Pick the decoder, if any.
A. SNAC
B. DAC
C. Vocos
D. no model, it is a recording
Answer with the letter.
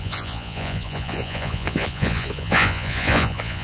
C